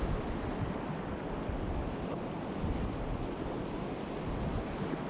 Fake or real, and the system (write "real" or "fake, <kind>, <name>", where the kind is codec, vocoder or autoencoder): real